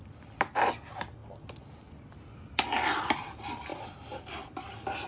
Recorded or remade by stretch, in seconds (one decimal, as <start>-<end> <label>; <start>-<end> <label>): 0.0-5.1 recorded